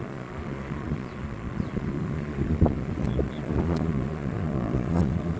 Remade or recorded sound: remade